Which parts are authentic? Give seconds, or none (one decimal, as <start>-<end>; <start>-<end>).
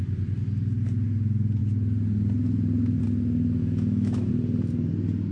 0.0-3.6; 4.3-5.3